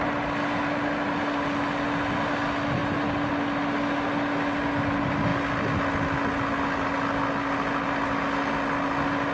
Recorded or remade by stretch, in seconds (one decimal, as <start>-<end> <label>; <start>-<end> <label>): 0.0-9.3 recorded